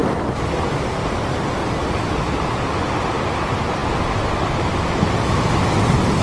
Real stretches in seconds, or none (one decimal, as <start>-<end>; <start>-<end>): 0.0-6.2